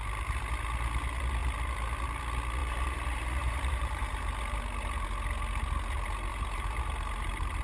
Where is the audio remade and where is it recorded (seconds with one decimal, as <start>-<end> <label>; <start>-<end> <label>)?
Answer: 0.0-2.6 recorded; 2.6-4.4 remade; 4.4-6.3 recorded; 6.3-6.8 remade; 6.8-7.6 recorded